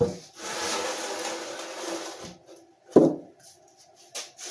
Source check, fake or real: real